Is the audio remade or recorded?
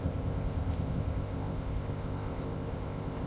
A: remade